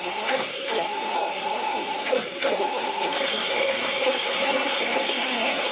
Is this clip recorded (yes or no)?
no